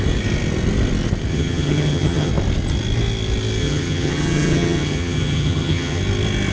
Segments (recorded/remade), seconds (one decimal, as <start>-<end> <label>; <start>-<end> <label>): 0.0-1.3 recorded; 1.3-2.3 remade; 2.3-3.6 recorded; 3.6-6.0 remade; 6.0-6.5 recorded